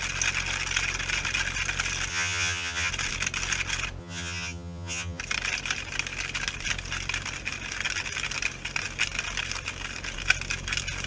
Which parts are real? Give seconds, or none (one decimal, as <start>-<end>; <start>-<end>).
0.0-2.1; 2.9-4.0; 5.2-11.1